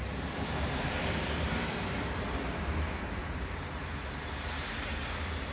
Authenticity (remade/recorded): remade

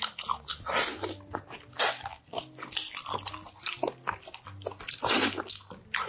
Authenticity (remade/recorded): recorded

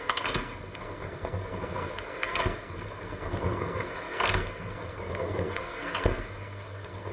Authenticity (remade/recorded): remade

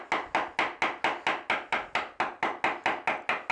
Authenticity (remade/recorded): recorded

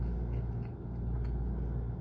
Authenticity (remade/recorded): recorded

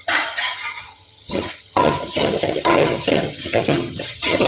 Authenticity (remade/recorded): remade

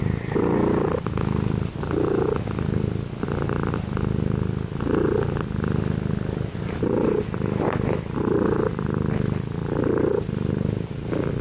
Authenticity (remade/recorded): recorded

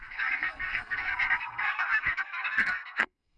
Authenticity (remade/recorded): remade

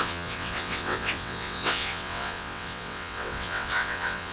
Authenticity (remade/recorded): remade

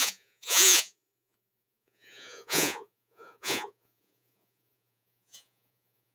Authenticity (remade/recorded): remade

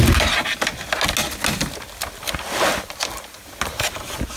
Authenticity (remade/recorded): recorded